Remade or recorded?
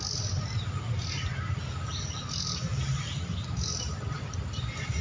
recorded